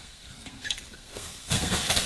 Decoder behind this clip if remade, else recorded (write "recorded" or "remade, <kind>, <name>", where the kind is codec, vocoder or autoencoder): remade, codec, SNAC